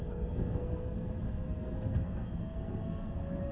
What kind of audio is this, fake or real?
fake